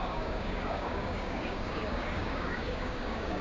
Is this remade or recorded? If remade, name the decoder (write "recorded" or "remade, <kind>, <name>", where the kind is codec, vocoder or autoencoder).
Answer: remade, codec, DAC